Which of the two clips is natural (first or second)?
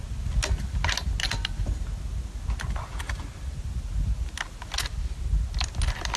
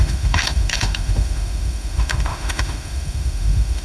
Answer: first